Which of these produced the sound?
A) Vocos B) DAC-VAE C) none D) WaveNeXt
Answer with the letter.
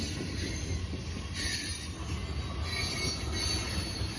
C